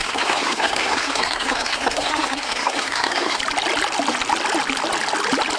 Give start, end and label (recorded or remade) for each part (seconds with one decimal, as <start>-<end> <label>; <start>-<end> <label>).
0.0-3.4 remade; 3.4-5.6 recorded